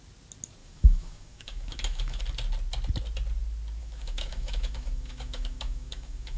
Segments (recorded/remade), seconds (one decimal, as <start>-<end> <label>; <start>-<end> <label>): 0.0-0.6 recorded; 0.6-2.2 remade; 2.2-3.8 recorded; 3.8-6.4 remade